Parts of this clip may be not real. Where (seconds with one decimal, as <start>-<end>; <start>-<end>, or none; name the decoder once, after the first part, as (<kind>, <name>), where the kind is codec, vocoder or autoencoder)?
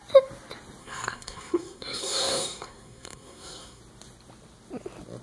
0.8-3.8 (codec, SNAC)